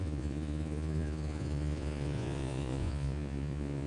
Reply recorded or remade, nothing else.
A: remade